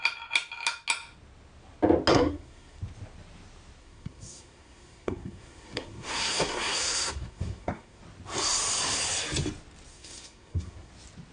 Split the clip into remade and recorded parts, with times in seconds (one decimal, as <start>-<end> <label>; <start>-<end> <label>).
0.0-2.1 recorded; 2.1-2.8 remade; 2.8-3.8 recorded; 3.8-8.0 remade; 8.0-9.9 recorded; 9.9-10.9 remade; 10.9-11.3 recorded